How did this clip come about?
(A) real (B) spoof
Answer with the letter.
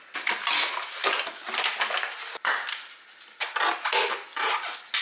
A